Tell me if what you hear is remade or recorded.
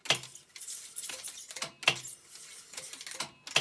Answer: recorded